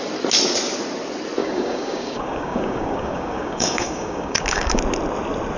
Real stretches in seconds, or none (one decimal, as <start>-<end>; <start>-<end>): 0.0-1.4; 4.8-5.6

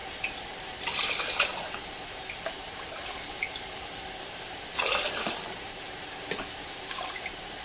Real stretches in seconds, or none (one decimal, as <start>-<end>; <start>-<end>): none

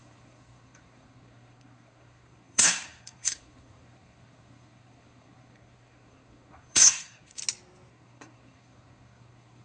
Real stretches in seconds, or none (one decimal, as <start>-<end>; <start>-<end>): 7.4-7.9

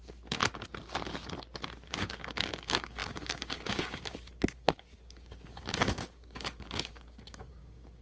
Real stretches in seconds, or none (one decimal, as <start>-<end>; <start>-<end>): 0.4-1.9

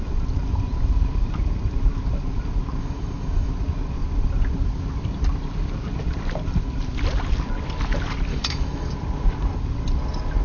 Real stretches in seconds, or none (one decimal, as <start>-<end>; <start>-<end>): 0.0-2.8; 3.5-8.3; 8.9-10.4

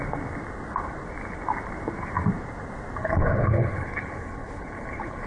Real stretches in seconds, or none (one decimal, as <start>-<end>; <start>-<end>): 0.0-3.0